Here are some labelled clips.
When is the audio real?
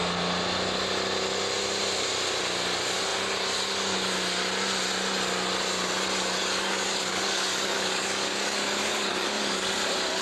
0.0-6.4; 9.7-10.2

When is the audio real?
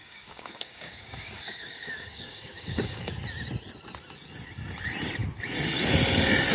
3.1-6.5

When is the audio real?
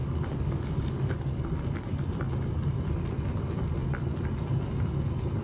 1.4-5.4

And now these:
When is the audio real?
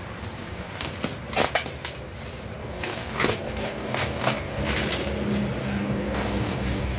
0.0-0.4; 0.9-2.6; 4.6-5.6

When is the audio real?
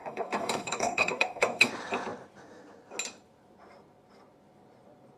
1.7-5.2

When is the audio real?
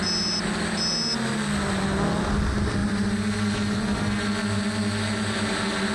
0.0-5.9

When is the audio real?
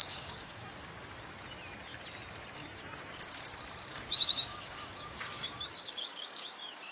0.7-2.6; 3.4-3.9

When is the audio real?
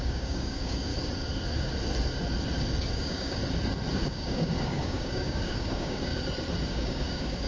0.9-2.9; 3.4-3.9; 6.1-6.7